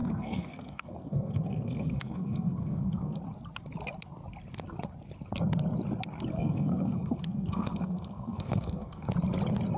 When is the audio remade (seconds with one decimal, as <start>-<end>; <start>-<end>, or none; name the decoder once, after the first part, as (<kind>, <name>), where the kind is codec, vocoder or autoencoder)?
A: 0.0-3.2 (codec, SNAC); 6.3-9.1